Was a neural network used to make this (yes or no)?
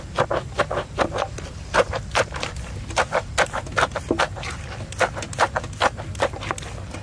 no